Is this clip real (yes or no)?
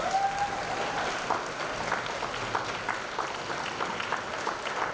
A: yes